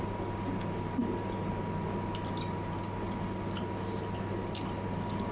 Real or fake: real